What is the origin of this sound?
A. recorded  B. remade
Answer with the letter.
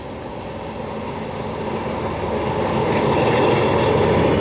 A